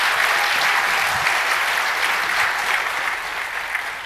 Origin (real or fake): real